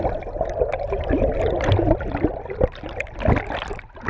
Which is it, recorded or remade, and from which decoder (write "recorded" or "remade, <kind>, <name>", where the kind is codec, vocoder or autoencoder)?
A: recorded